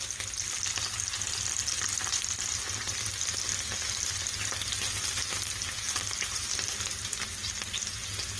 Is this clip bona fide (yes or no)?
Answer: yes